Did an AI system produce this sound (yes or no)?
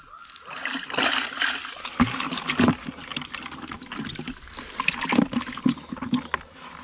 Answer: no